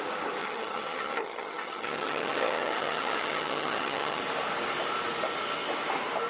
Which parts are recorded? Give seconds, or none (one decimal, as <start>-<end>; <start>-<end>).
0.0-0.4; 4.2-6.3